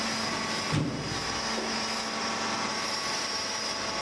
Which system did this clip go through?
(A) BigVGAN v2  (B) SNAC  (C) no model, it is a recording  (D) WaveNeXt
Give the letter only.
C